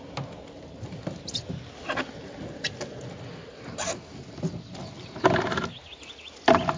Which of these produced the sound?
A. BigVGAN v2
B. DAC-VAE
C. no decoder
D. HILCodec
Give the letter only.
C